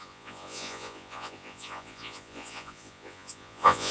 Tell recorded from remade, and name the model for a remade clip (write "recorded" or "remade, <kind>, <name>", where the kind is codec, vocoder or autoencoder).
remade, vocoder, Vocos